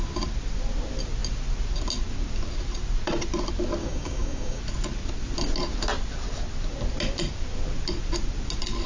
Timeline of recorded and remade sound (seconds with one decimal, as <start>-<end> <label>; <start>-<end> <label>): 0.0-3.8 recorded; 3.8-4.6 remade; 4.6-8.9 recorded